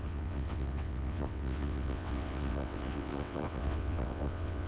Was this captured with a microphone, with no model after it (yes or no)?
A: no